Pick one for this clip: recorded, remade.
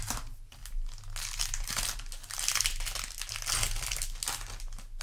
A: recorded